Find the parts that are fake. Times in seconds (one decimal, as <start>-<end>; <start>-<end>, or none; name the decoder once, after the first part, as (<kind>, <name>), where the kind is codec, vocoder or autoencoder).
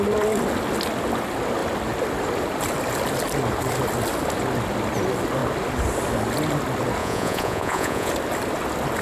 7.0-8.1 (vocoder, Vocos)